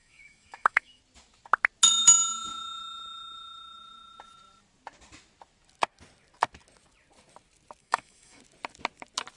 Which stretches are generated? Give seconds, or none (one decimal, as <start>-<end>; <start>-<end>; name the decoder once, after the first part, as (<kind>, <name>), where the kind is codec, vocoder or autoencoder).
0.0-1.0 (autoencoder, DAC-VAE); 7.8-8.4